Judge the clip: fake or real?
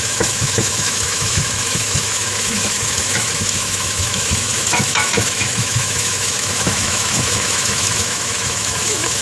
fake